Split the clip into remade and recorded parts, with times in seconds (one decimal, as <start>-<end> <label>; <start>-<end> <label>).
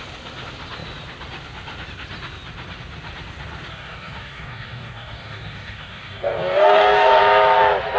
0.0-3.7 recorded; 3.7-7.2 remade; 7.2-8.0 recorded